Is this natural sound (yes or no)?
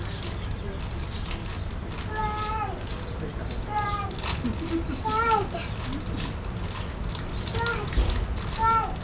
yes